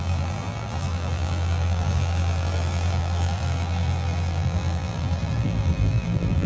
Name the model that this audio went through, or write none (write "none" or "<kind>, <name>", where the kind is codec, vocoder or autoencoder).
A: vocoder, BigVGAN v2